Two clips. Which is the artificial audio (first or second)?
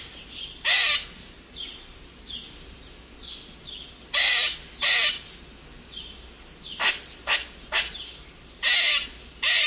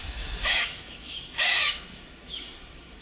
second